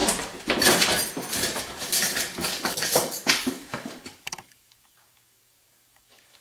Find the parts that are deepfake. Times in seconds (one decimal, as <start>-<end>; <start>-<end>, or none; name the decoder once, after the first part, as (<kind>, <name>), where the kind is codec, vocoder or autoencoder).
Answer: 1.6-6.4 (codec, DAC)